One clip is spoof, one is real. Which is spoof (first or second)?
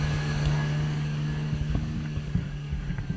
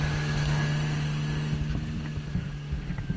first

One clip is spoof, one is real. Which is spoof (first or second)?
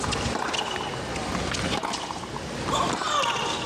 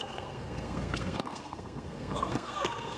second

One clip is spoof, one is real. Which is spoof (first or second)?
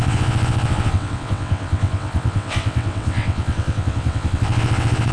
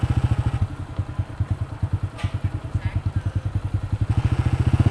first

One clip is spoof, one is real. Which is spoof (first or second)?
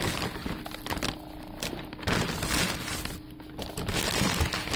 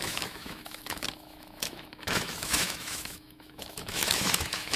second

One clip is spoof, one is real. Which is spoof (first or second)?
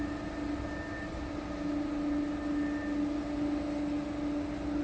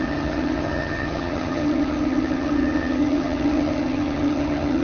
second